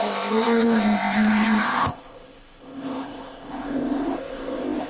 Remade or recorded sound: remade